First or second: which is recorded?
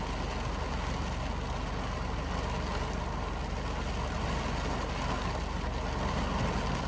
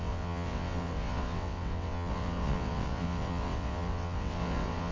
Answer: first